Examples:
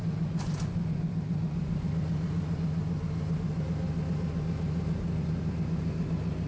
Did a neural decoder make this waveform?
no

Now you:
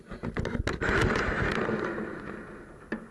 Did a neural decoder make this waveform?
no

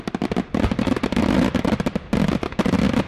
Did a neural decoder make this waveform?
no